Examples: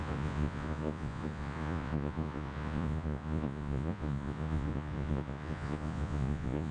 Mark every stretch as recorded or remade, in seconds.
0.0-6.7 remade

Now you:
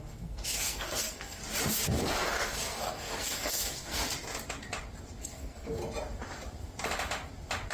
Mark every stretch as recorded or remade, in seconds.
0.0-1.4 remade; 1.4-2.0 recorded; 2.0-4.0 remade; 4.0-5.2 recorded; 5.2-5.8 remade; 5.8-7.7 recorded

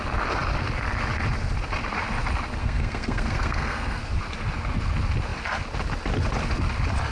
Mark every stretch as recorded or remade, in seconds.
0.0-2.6 recorded; 2.6-4.0 remade; 4.0-7.1 recorded

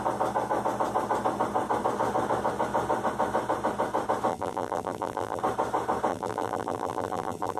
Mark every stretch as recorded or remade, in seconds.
0.0-4.3 recorded; 4.3-5.4 remade; 5.4-6.1 recorded; 6.1-7.6 remade